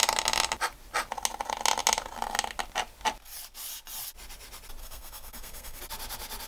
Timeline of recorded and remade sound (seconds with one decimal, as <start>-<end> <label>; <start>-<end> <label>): 0.0-4.8 recorded; 4.8-5.8 remade; 5.8-6.5 recorded